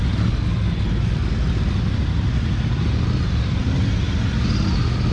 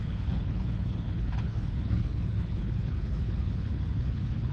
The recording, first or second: first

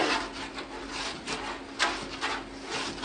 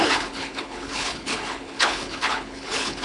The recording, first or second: first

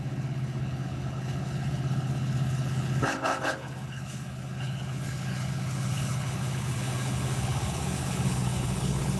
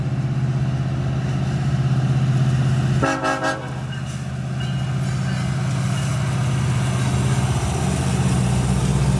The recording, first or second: second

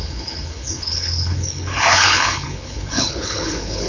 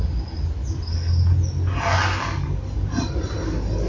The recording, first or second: second